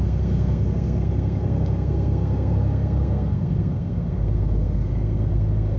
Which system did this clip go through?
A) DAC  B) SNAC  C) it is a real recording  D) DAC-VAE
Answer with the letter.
B